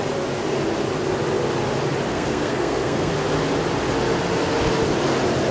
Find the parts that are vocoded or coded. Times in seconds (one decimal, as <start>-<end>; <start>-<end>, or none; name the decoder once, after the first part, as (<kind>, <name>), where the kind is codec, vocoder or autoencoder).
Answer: 2.1-3.1 (codec, SNAC)